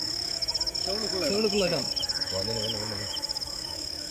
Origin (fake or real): fake